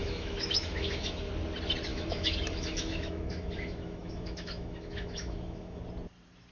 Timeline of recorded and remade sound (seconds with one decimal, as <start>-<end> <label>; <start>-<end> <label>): 0.0-1.3 remade; 1.3-1.9 recorded; 1.9-5.8 remade; 5.8-6.5 recorded